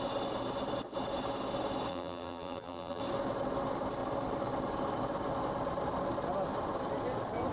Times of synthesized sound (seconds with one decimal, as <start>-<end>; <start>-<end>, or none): 1.9-3.0